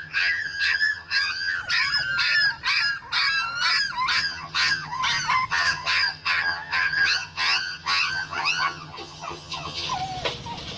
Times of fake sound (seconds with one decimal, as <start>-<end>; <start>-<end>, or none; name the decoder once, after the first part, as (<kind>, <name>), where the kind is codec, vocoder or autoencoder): 0.0-1.6 (vocoder, HiFi-GAN); 4.1-5.0; 5.5-9.9